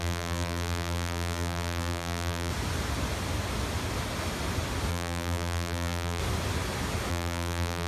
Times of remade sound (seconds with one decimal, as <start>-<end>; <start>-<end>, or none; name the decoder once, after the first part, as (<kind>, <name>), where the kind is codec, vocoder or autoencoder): 0.0-2.5 (vocoder, BigVGAN v2); 4.9-6.2; 7.1-7.9

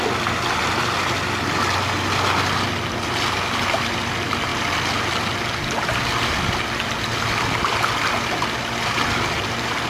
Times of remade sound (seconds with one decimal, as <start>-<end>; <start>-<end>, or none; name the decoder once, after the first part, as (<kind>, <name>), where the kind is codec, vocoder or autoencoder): none

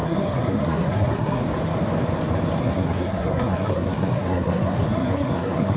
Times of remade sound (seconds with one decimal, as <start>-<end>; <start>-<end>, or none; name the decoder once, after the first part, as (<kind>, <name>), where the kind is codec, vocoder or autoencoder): 0.0-1.4 (codec, SNAC); 2.6-5.8

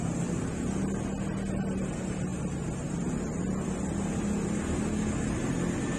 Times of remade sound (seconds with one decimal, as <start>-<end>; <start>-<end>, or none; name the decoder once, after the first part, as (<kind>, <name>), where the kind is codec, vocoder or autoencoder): none

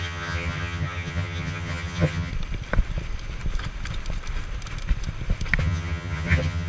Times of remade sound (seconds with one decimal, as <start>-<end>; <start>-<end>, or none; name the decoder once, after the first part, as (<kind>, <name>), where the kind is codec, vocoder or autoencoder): 0.0-2.3 (vocoder, HiFi-GAN); 5.6-6.7